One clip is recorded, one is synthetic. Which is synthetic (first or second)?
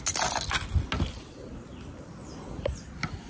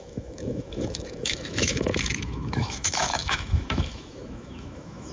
second